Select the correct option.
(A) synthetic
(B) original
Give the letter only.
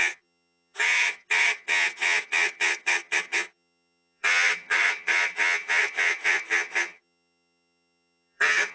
A